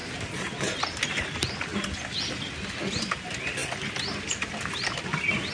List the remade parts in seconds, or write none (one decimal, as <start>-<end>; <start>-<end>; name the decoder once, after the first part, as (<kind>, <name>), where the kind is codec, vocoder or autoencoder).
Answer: none